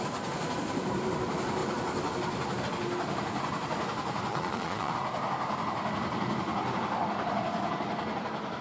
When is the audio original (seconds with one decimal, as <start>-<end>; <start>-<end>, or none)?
0.0-4.3; 4.9-8.6